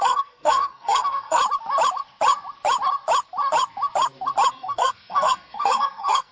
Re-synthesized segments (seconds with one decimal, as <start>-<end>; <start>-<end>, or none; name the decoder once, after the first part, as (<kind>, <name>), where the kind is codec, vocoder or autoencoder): 0.0-1.4 (codec, SNAC); 4.5-6.3